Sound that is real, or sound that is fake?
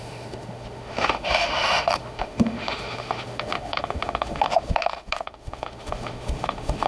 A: fake